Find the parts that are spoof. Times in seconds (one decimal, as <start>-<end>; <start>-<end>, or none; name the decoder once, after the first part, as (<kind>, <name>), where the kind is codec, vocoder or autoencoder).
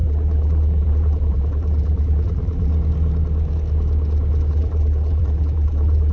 0.0-2.7 (vocoder, BigVGAN v2); 4.5-6.1